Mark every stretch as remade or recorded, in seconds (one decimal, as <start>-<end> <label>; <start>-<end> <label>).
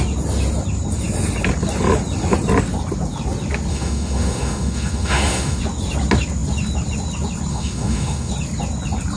0.0-3.7 recorded; 3.7-5.6 remade; 5.6-7.5 recorded; 7.5-8.3 remade; 8.3-9.2 recorded